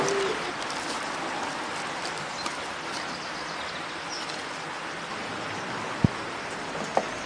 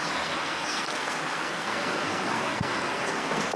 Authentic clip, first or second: first